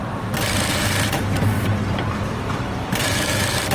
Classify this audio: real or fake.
fake